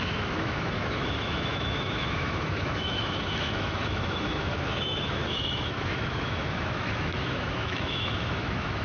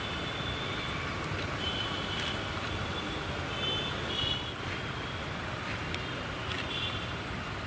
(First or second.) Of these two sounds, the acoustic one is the second